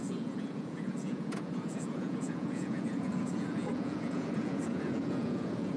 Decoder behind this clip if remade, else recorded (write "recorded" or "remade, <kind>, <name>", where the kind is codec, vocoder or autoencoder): remade, vocoder, Vocos